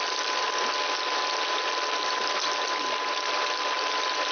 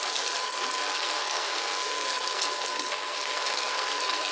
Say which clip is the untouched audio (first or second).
first